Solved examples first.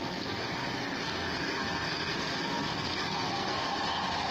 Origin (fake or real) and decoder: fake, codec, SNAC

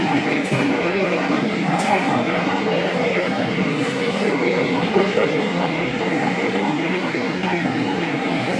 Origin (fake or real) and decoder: fake, codec, SNAC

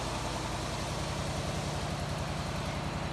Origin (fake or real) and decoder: real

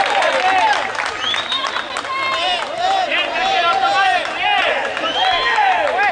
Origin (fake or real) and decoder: real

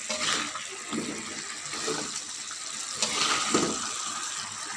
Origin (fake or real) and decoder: real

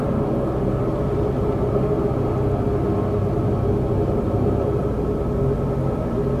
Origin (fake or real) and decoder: real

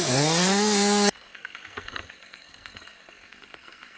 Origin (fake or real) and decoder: fake, codec, SNAC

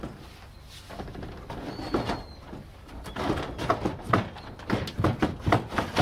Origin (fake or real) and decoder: real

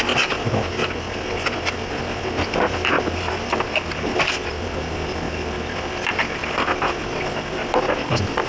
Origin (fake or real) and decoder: real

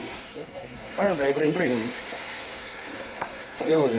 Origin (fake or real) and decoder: fake, codec, SNAC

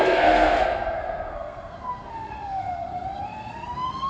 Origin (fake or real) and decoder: fake, codec, SNAC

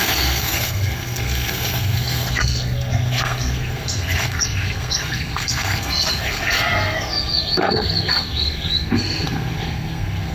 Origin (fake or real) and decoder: fake, codec, SNAC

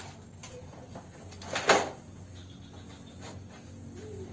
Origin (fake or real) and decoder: real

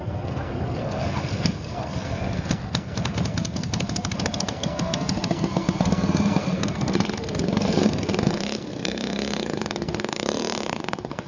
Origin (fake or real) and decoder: fake, codec, SNAC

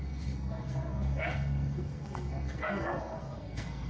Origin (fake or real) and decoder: fake, codec, SNAC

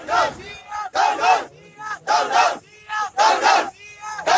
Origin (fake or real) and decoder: real